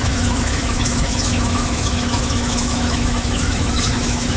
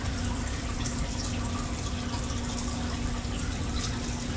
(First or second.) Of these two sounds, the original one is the second